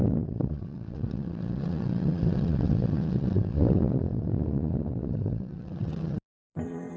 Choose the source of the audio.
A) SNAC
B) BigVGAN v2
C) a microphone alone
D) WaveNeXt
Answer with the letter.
D